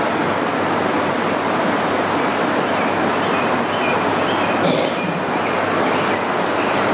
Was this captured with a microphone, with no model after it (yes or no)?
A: yes